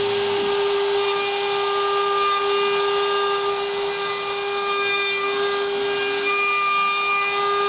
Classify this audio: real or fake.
real